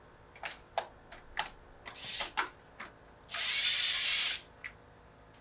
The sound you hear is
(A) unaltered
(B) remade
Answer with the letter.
A